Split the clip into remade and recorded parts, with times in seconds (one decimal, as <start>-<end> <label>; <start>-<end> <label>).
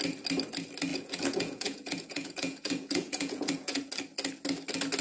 0.0-0.9 recorded; 0.9-3.9 remade; 3.9-5.0 recorded